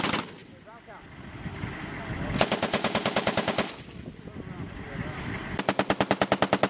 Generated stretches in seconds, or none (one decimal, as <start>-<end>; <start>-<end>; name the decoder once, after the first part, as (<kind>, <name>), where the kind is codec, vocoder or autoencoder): none